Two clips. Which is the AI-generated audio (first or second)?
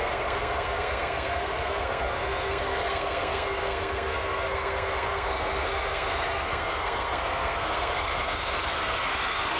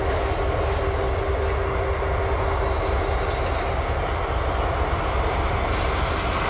first